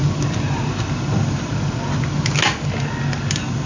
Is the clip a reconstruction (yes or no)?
no